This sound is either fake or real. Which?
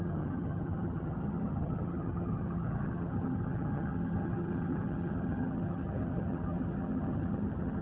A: fake